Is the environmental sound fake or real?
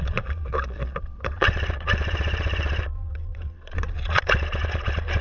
fake